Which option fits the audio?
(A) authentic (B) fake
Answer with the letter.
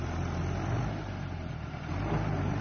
A